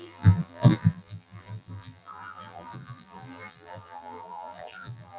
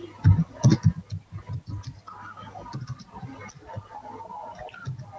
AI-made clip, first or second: first